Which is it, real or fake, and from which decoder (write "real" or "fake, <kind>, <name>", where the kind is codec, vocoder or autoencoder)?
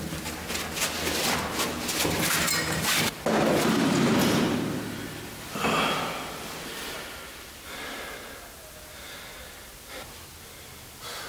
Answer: real